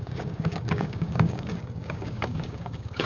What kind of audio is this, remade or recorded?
remade